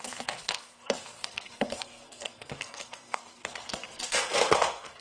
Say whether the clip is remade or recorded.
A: remade